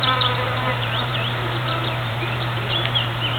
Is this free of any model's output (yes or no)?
no